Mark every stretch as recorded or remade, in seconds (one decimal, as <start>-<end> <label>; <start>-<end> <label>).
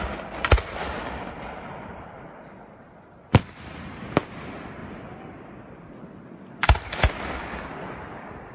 0.0-4.8 recorded; 4.8-7.1 remade; 7.1-8.5 recorded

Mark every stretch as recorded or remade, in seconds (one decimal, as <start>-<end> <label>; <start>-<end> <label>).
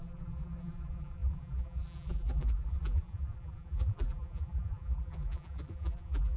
0.0-6.4 remade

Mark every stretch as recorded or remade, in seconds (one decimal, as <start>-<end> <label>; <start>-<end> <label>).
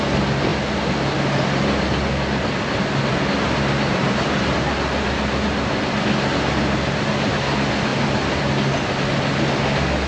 0.0-10.1 recorded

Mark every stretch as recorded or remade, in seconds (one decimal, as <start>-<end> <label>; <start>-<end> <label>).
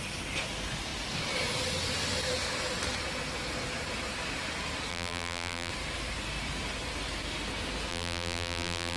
0.0-4.9 recorded; 4.9-5.7 remade; 5.7-7.9 recorded; 7.9-9.0 remade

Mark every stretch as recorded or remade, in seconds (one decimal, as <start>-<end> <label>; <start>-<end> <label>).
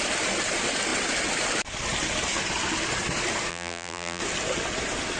0.0-3.5 recorded; 3.5-4.2 remade; 4.2-5.2 recorded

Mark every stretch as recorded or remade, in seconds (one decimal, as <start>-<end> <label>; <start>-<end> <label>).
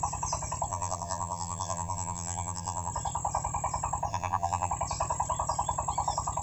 0.0-0.7 recorded; 0.7-2.9 remade; 2.9-4.1 recorded; 4.1-4.7 remade; 4.7-6.4 recorded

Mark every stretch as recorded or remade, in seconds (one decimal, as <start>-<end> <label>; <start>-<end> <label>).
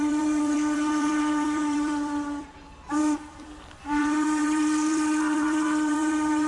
0.0-6.5 remade